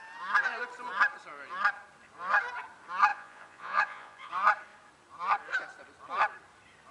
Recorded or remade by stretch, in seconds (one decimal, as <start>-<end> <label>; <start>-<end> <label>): 0.0-3.1 recorded; 3.1-4.3 remade; 4.3-6.9 recorded